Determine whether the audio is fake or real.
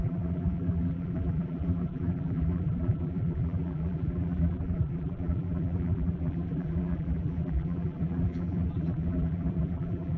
fake